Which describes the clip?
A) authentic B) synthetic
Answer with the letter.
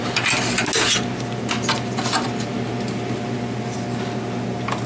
A